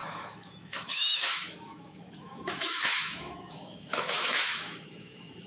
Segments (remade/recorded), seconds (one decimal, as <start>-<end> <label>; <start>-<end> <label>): 0.0-5.5 remade